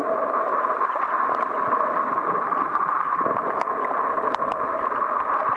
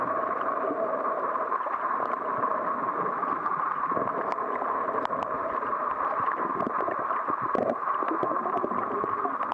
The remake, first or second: second